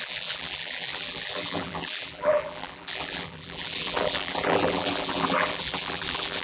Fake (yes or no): yes